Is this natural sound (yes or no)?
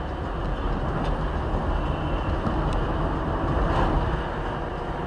yes